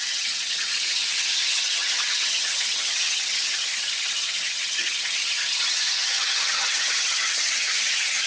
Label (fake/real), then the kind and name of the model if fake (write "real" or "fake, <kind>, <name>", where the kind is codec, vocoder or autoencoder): fake, vocoder, HiFi-GAN